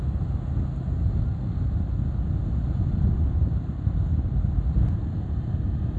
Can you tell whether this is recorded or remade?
recorded